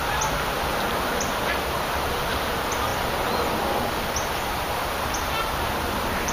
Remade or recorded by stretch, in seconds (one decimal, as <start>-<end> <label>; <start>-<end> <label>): 0.0-2.9 remade; 2.9-3.9 recorded; 3.9-6.3 remade